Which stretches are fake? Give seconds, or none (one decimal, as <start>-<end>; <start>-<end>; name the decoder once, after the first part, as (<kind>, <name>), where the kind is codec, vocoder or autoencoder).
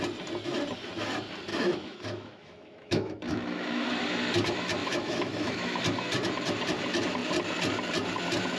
1.5-3.9 (autoencoder, DAC-VAE); 4.8-5.8